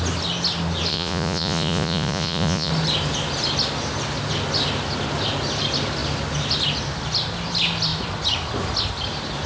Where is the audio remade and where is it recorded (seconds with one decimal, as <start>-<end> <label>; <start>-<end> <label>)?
0.0-0.9 recorded; 0.9-2.7 remade; 2.7-9.5 recorded